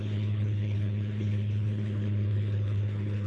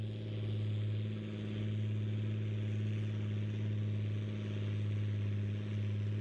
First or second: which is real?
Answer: second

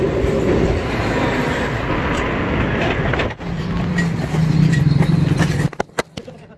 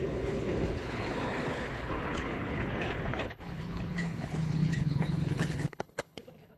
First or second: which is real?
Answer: first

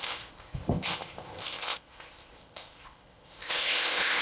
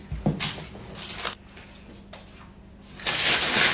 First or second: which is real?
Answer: second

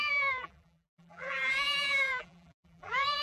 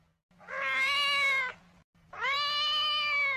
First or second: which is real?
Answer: second